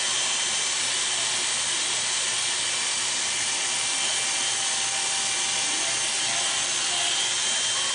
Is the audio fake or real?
real